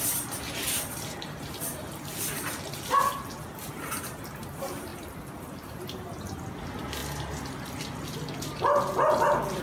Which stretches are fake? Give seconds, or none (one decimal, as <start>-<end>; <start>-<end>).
0.0-2.1; 3.5-4.9; 5.4-7.0